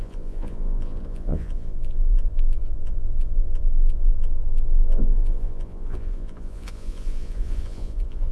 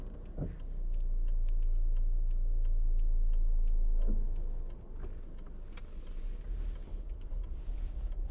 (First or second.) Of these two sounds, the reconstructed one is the first